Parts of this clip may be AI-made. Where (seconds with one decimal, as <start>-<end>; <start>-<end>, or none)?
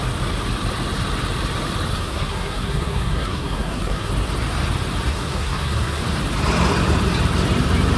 1.9-4.1; 5.1-6.0